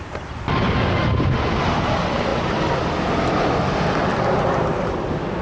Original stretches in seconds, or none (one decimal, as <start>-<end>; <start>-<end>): 0.0-5.4